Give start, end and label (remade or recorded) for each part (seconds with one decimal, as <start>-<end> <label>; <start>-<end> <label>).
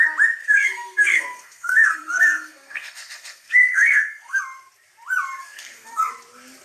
0.0-0.4 recorded; 0.4-4.4 remade; 4.4-5.4 recorded; 5.4-6.1 remade; 6.1-6.6 recorded